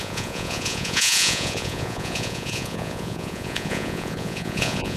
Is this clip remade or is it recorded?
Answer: remade